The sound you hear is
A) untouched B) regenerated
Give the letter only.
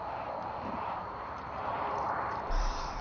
B